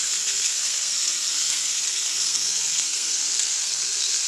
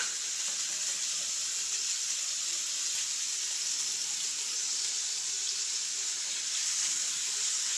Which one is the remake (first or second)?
first